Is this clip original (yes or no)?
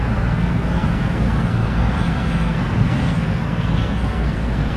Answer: no